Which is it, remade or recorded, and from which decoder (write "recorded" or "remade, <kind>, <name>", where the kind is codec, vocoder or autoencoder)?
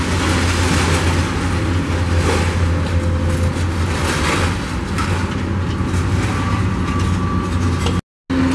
recorded